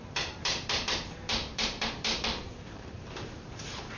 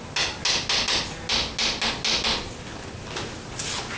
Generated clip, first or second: first